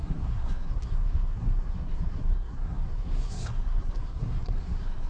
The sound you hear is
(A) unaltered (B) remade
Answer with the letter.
B